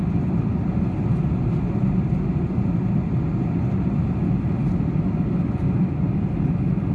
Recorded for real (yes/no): yes